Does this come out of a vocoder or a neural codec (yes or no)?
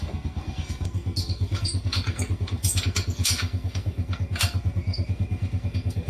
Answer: yes